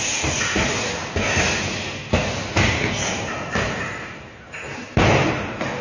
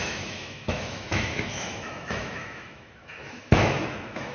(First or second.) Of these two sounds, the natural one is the first